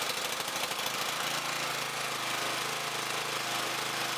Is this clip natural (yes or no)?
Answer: yes